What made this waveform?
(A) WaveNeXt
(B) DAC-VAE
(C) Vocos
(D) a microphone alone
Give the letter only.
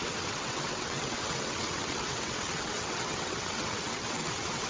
A